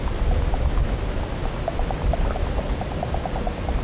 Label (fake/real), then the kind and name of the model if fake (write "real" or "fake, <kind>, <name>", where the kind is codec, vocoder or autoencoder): real